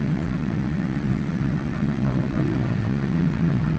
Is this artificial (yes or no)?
yes